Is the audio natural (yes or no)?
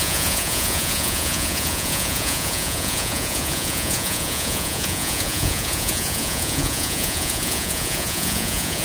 no